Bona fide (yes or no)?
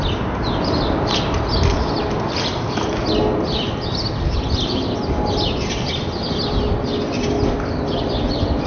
yes